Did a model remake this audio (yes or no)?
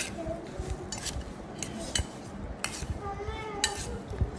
no